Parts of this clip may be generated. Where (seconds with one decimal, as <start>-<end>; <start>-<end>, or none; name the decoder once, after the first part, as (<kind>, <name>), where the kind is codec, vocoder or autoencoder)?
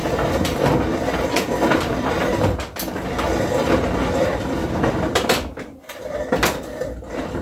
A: 0.0-0.6 (vocoder, BigVGAN v2); 4.6-6.6